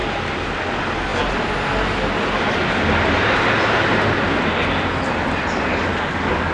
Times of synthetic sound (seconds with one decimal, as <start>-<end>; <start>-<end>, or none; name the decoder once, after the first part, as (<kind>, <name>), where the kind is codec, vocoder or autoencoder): 5.7-6.5 (codec, DAC)